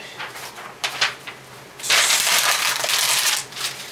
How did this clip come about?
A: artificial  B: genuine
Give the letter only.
B